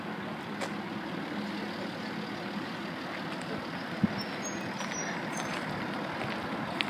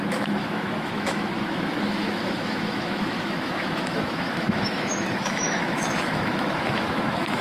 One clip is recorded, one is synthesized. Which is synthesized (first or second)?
second